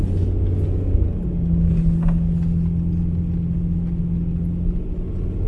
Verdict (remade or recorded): recorded